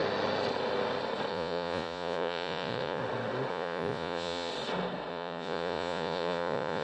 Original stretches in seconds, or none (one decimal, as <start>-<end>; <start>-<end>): 0.0-1.3; 3.0-3.5; 4.5-5.1